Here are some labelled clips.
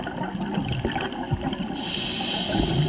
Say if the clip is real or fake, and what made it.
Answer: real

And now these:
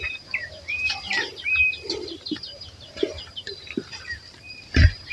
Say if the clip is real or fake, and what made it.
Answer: fake, vocoder, BigVGAN v2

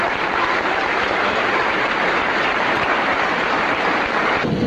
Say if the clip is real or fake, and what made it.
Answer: fake, vocoder, BigVGAN v2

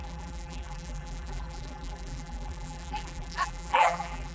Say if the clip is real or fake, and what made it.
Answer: fake, vocoder, BigVGAN v2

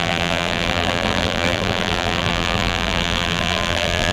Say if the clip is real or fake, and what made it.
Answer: fake, vocoder, BigVGAN v2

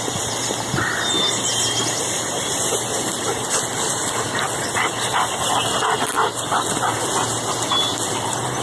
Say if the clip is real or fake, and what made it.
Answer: real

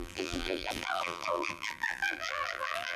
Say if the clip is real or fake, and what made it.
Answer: fake, vocoder, BigVGAN v2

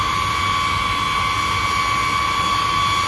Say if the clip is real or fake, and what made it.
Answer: real